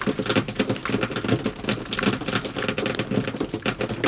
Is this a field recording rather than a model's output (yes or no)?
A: yes